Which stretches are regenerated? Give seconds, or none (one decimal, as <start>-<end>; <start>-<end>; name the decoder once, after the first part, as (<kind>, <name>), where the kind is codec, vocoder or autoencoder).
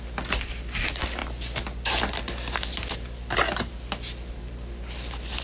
none